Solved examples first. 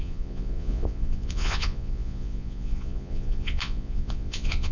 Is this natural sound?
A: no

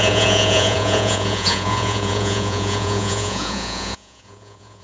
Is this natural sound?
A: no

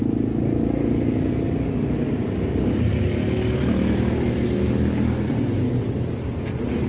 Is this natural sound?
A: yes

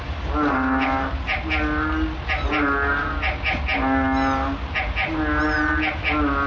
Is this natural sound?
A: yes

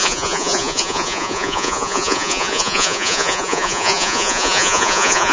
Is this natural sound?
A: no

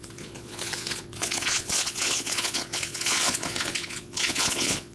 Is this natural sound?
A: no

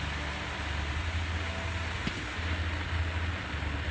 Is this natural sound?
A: yes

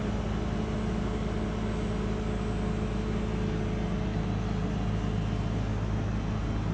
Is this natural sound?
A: yes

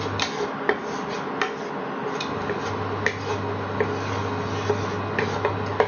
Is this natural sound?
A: yes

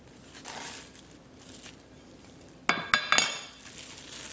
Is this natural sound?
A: yes